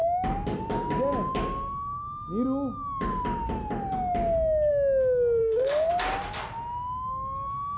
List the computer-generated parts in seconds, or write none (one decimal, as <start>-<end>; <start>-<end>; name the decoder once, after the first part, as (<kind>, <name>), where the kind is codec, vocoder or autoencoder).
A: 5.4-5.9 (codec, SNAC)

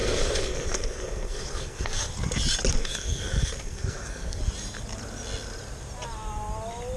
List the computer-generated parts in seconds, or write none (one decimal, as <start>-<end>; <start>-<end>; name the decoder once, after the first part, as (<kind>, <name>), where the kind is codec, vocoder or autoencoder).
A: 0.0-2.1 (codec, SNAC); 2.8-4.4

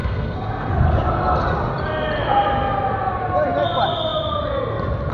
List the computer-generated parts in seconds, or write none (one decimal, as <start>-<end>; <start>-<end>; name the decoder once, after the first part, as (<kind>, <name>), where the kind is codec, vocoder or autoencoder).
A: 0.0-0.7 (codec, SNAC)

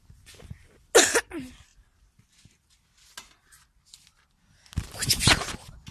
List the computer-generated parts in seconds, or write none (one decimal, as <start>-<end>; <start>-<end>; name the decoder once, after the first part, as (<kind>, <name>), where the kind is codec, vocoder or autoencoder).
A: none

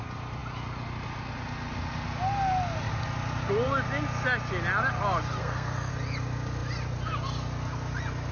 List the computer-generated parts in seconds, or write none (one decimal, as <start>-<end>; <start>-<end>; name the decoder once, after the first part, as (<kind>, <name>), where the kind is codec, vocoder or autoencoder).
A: 5.4-5.9 (codec, SNAC)

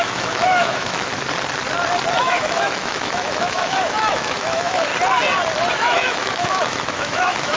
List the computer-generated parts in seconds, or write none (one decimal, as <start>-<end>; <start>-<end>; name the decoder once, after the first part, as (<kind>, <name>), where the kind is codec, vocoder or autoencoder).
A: 0.0-1.1 (autoencoder, DAC-VAE); 2.2-4.9; 5.7-7.6